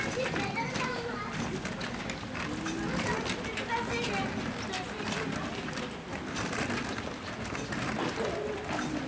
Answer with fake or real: real